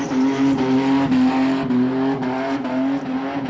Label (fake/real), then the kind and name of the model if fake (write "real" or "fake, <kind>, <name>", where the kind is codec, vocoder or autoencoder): real